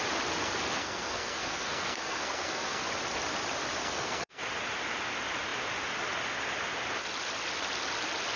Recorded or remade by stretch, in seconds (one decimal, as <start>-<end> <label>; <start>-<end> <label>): 0.0-0.4 recorded; 0.4-2.8 remade; 2.8-3.8 recorded; 3.8-4.4 remade; 4.4-8.4 recorded